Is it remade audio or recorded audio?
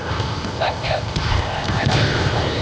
remade